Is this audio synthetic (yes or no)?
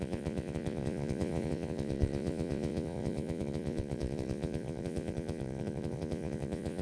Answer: yes